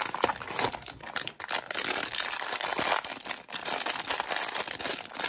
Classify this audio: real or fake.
real